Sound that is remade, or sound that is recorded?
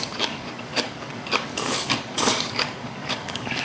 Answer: remade